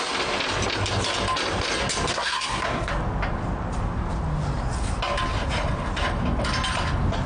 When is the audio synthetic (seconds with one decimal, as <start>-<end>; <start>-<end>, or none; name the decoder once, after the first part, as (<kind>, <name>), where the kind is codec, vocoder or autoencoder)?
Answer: 2.1-2.9 (codec, SNAC)